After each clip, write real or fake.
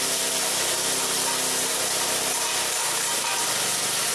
fake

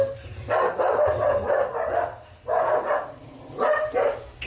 real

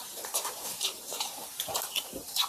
fake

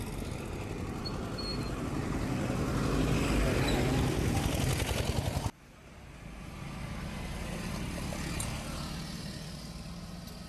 real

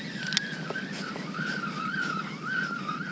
real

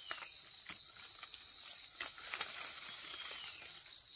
real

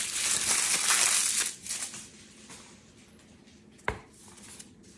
real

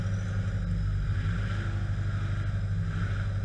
real